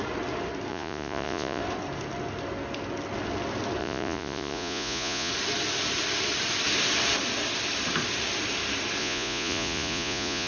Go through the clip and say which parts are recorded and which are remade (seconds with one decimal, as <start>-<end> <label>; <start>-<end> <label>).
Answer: 0.0-0.7 recorded; 0.7-1.6 remade; 1.6-3.8 recorded; 3.8-5.3 remade; 5.3-9.0 recorded; 9.0-10.5 remade